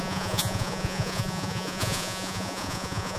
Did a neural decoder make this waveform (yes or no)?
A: yes